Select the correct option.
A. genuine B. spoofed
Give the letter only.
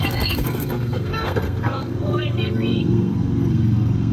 B